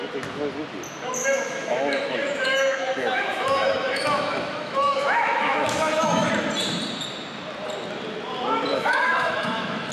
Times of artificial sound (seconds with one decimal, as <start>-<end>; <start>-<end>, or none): 1.2-6.3; 8.7-9.9